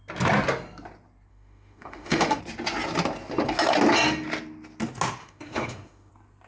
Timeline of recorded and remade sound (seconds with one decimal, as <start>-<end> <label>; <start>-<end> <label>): 0.0-1.3 recorded; 1.3-2.4 remade; 2.4-5.2 recorded; 5.2-6.1 remade; 6.1-6.5 recorded

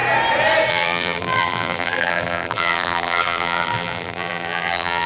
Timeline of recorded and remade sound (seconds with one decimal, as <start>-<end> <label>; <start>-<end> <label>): 0.0-0.7 recorded; 0.7-5.1 remade

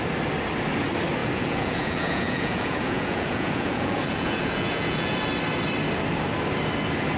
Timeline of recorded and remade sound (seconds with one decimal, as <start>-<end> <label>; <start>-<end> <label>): 0.0-1.2 recorded; 1.2-5.3 remade; 5.3-7.2 recorded

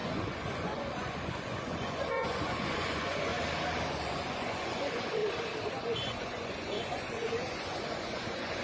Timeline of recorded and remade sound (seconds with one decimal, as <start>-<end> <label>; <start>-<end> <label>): 0.0-3.3 remade; 3.3-3.9 recorded; 3.9-5.2 remade; 5.2-5.8 recorded; 5.8-8.6 remade

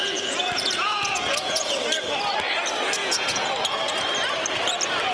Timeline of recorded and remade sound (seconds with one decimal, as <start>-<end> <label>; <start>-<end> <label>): 0.0-1.7 remade; 1.7-3.0 recorded; 3.0-3.5 remade; 3.5-5.1 recorded

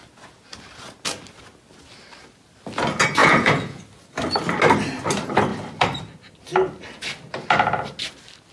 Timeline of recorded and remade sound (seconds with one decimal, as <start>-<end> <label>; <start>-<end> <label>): 0.0-3.2 recorded; 3.2-3.8 remade; 3.8-8.5 recorded

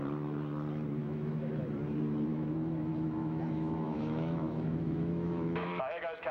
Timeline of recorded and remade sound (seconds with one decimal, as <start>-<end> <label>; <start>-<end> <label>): 0.0-1.0 recorded; 1.0-1.5 remade; 1.5-2.3 recorded; 2.3-6.3 remade